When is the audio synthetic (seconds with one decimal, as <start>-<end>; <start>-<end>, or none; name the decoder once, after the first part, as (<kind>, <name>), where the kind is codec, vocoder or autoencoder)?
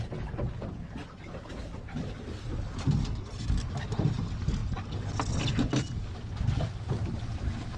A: none